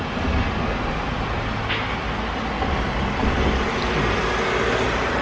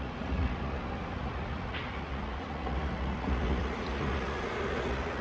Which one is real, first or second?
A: first